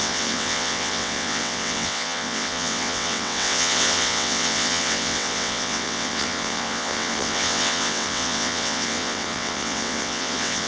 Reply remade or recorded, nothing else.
remade